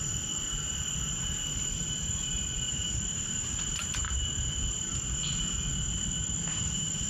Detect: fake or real fake